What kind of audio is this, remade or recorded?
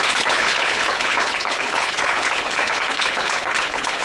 remade